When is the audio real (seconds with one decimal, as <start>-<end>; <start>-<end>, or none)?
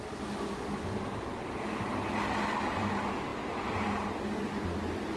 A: 0.0-5.2